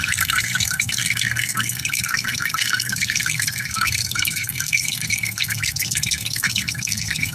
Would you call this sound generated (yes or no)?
yes